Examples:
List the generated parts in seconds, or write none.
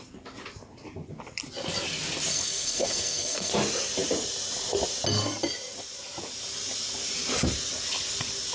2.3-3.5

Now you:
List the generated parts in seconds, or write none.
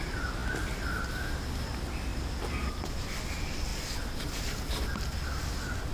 2.1-3.1; 3.7-4.4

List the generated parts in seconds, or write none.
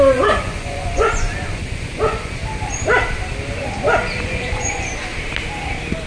0.0-2.4; 4.2-5.1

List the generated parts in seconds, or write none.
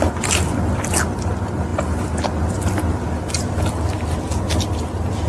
none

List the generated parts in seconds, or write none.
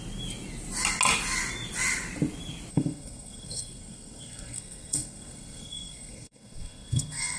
2.7-7.4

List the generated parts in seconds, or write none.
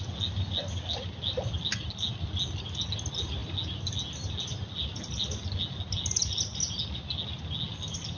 none